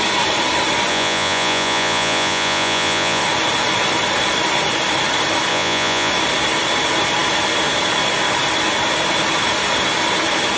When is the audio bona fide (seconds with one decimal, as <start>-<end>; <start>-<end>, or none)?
0.0-0.9; 3.2-5.5; 6.1-10.6